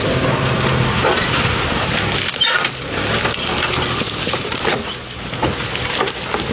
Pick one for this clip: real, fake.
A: real